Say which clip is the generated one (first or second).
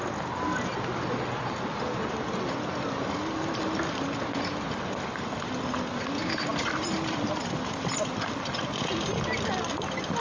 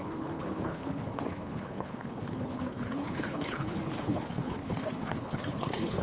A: second